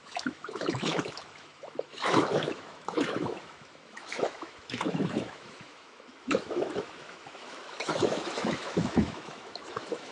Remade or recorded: remade